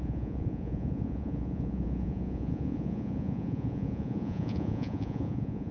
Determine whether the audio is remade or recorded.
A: remade